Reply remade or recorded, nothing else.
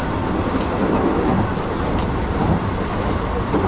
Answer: recorded